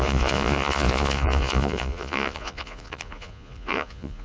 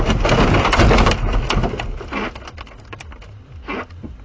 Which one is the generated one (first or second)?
first